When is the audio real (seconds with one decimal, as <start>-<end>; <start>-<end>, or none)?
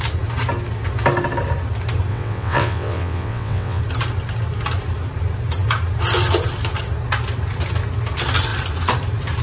0.0-2.1; 3.8-9.4